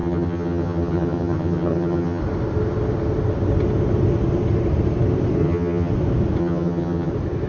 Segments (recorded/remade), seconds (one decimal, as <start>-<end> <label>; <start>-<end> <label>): 0.0-2.2 remade; 2.2-5.4 recorded; 5.4-5.9 remade; 5.9-6.4 recorded; 6.4-7.1 remade; 7.1-7.5 recorded